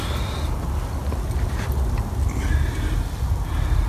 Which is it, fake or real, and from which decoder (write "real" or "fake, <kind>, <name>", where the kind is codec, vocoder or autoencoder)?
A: real